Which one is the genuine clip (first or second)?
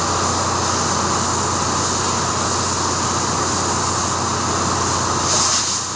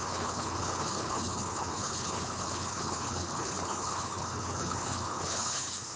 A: first